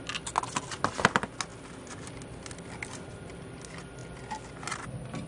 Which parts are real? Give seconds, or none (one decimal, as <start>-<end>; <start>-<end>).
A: 0.0-5.3